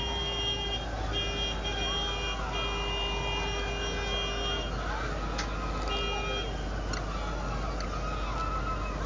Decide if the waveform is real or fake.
real